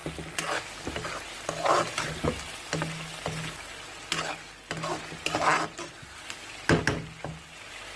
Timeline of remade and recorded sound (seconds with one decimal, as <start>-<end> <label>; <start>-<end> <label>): 0.0-8.0 recorded